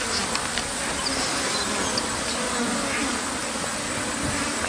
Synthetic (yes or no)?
no